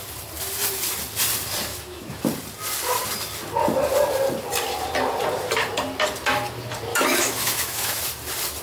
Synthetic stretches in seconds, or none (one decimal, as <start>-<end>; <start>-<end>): 1.7-2.2; 6.9-8.0